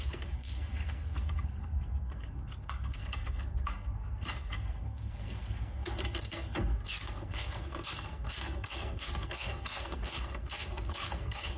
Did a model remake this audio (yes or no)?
yes